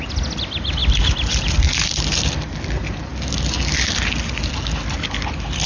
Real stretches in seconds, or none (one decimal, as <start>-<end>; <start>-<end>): 0.0-5.7